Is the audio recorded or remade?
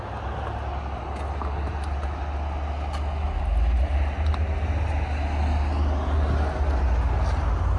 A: recorded